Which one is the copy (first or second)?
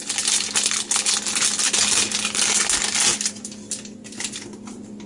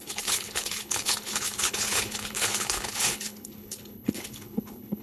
second